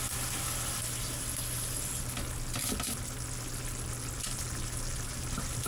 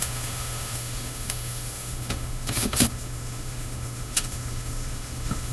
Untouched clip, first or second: first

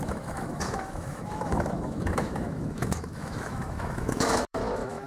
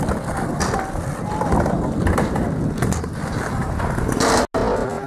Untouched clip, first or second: second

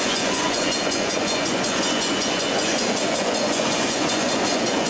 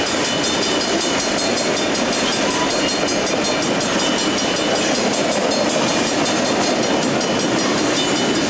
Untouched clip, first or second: second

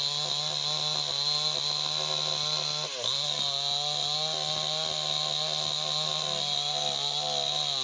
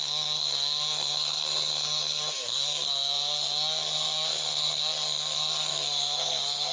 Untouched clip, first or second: first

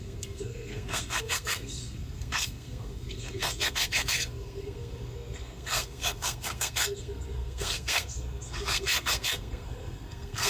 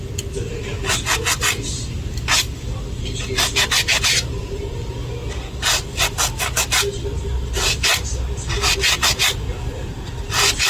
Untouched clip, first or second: second